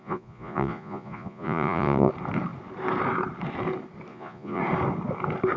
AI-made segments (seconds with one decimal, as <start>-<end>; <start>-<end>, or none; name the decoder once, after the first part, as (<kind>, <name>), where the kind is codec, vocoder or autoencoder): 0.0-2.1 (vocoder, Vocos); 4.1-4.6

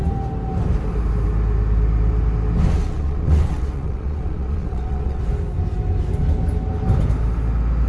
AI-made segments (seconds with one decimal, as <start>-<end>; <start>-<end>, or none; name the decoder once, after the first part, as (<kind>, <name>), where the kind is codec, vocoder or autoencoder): 2.8-5.2 (vocoder, WaveNeXt)

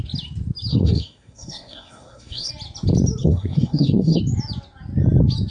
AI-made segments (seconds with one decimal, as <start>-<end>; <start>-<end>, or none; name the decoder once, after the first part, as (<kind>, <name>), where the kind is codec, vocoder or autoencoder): 0.7-2.5 (codec, SNAC); 3.2-4.2

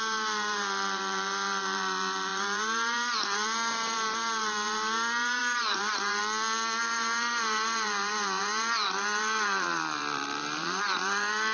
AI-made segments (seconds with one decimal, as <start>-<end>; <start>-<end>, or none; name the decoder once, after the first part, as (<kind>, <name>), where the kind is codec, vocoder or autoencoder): 0.0-6.2 (vocoder, BigVGAN v2); 6.8-11.5